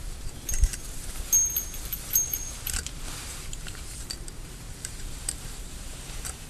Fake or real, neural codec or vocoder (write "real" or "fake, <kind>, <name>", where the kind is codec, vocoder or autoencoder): fake, vocoder, BigVGAN v2